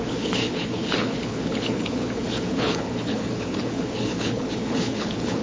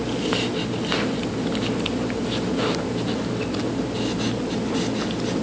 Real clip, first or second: second